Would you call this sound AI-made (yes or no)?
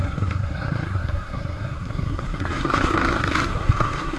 yes